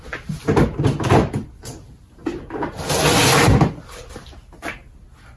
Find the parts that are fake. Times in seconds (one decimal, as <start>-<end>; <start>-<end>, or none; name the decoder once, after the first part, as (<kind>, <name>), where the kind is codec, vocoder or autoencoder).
none